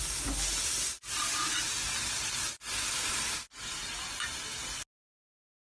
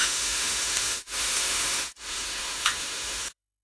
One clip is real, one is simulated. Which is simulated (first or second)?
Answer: second